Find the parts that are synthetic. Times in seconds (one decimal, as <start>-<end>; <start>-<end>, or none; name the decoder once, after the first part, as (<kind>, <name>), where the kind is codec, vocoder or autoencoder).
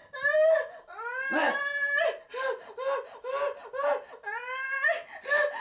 none